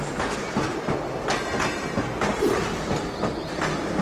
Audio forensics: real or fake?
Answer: real